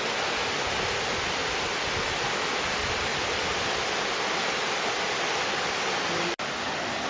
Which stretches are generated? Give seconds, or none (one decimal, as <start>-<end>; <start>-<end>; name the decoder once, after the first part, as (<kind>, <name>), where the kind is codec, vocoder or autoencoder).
1.4-2.4 (vocoder, BigVGAN v2)